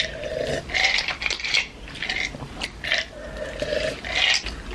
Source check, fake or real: real